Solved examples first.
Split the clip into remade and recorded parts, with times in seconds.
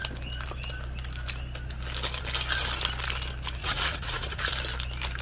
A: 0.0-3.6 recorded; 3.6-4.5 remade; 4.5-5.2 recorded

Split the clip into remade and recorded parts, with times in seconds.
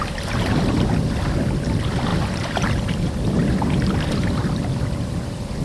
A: 0.0-5.6 recorded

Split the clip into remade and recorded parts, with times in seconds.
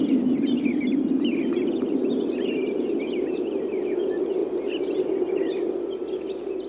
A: 0.0-4.4 remade; 4.4-5.0 recorded; 5.0-6.7 remade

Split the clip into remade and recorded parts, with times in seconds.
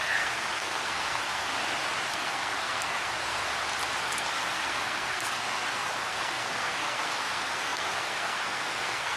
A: 0.0-1.5 remade; 1.5-2.1 recorded; 2.1-3.5 remade; 3.5-4.0 recorded; 4.0-9.2 remade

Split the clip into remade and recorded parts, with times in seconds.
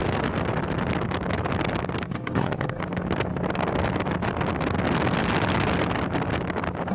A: 0.0-2.1 recorded; 2.1-2.8 remade; 2.8-6.9 recorded